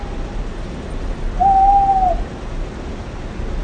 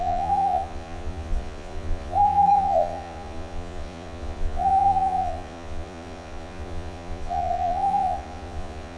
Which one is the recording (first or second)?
first